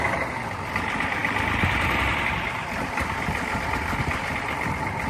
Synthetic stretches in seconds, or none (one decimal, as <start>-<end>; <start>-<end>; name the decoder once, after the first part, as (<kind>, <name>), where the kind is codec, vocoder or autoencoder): none

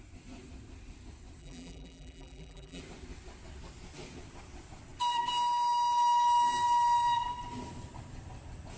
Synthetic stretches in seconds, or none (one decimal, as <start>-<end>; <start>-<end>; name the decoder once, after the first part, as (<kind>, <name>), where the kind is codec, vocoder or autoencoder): 1.4-2.8 (vocoder, BigVGAN v2)

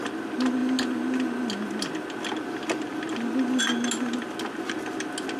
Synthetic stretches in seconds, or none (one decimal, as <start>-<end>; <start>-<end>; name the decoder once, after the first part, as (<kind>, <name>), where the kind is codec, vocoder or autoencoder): none

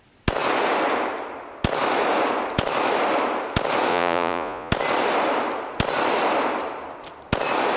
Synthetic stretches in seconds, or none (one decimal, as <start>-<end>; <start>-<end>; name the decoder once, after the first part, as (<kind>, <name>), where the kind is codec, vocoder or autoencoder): 3.9-4.7 (vocoder, Vocos)

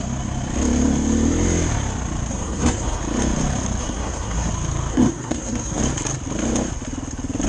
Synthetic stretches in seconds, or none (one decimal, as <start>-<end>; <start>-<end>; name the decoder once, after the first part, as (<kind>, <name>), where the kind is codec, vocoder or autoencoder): 2.3-3.0 (codec, SNAC); 3.8-4.5; 4.9-5.8